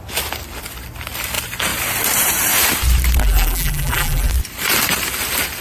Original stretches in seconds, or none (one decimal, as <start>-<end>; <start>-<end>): 0.0-3.2; 4.3-5.6